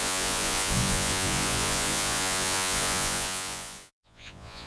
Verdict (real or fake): fake